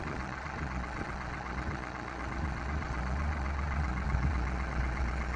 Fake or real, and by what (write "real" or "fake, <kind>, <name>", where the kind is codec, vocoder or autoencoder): fake, vocoder, Vocos